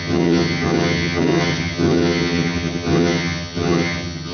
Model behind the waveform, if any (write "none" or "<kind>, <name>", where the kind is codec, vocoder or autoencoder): vocoder, HiFi-GAN